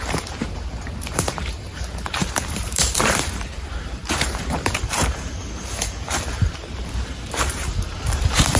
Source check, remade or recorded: remade